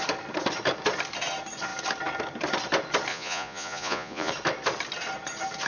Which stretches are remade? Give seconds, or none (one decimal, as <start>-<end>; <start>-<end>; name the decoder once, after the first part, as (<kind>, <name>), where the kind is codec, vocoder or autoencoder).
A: 3.1-4.3 (vocoder, Vocos)